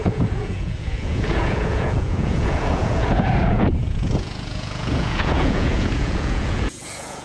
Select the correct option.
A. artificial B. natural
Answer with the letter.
A